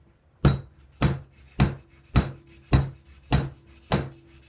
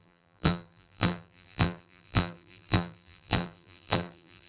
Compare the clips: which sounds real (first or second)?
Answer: first